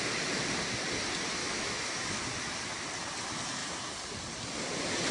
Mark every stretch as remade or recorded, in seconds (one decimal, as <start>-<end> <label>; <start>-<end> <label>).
0.0-1.4 recorded; 1.4-2.1 remade; 2.1-5.1 recorded